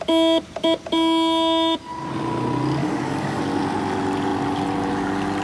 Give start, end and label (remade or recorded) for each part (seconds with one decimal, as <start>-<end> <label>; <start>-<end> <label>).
0.0-2.8 recorded; 2.8-3.4 remade; 3.4-5.4 recorded

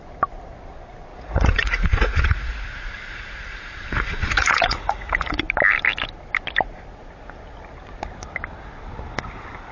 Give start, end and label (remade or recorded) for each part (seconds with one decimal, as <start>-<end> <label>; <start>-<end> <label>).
0.0-1.1 recorded; 1.1-5.4 remade; 5.4-9.7 recorded

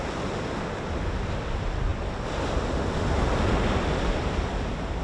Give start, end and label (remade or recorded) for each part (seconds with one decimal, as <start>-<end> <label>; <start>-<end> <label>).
0.0-5.0 recorded

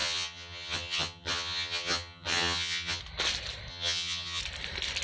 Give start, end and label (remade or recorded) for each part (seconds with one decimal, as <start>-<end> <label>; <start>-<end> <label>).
0.0-3.0 remade; 3.0-3.7 recorded; 3.7-4.4 remade; 4.4-5.0 recorded

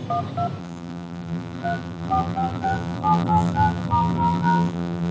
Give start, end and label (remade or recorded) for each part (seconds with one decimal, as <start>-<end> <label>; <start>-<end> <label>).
0.0-0.6 recorded; 0.6-5.1 remade

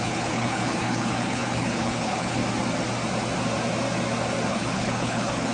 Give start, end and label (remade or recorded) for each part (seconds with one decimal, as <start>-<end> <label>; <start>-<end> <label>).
0.0-2.4 remade; 2.4-4.5 recorded; 4.5-5.5 remade